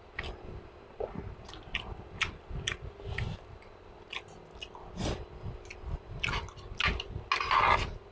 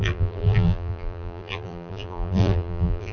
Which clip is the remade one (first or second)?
second